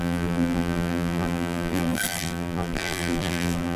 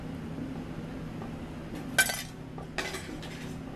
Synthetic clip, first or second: first